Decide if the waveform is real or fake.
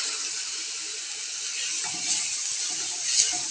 real